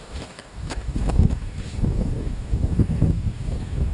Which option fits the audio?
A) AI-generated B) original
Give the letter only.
A